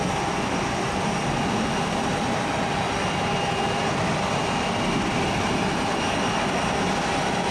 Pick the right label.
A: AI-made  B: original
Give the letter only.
B